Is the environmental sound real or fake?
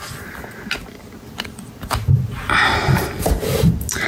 real